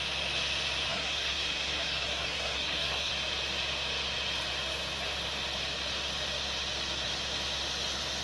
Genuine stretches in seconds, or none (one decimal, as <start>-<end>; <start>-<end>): 0.0-0.9; 3.1-8.2